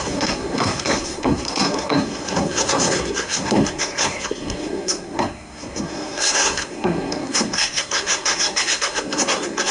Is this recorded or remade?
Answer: remade